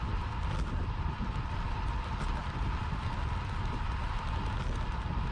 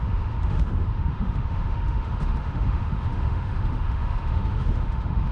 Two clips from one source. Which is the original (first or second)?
first